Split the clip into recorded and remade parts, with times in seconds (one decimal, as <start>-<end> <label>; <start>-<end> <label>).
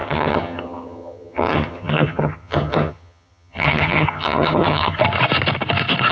0.0-5.0 remade; 5.0-6.1 recorded